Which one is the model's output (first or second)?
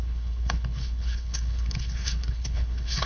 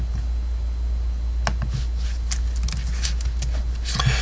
first